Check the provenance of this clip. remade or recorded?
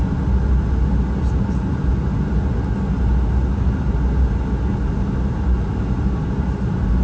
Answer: recorded